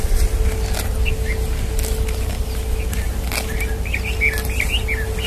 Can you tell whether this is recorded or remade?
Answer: recorded